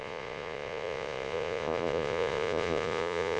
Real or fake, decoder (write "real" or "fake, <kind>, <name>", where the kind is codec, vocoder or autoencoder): fake, vocoder, Vocos